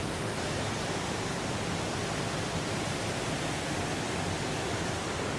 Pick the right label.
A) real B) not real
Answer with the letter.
A